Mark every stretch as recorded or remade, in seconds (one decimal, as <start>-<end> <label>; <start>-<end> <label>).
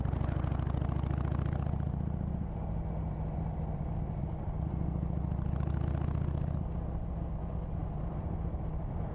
0.0-7.8 recorded; 7.8-9.1 remade